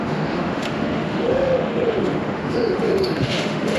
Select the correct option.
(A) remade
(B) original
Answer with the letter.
A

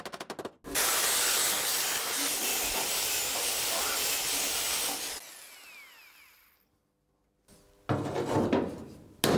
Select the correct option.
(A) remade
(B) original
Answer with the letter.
B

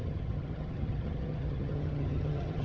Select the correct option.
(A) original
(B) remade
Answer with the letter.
B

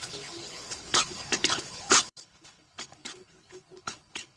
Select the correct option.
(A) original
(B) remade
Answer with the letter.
B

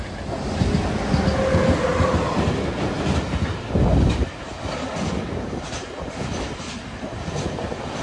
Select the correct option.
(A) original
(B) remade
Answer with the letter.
A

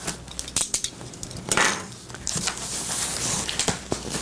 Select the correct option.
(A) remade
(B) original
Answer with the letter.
B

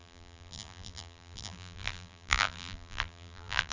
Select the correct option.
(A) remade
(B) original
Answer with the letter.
A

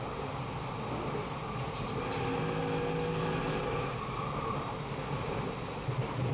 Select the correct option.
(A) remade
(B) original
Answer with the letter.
B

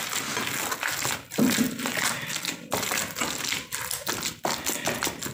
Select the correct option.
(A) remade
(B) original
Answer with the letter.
B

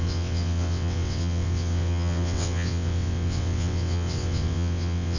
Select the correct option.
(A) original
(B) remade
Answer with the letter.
B